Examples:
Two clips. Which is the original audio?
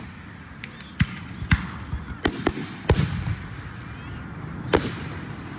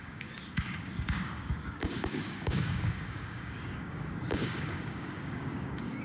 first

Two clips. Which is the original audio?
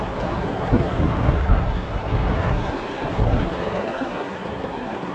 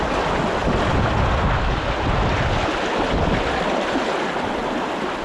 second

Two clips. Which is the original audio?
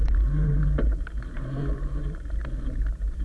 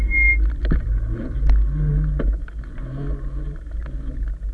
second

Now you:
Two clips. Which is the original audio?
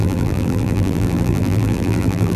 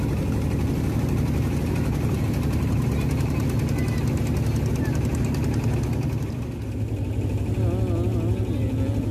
second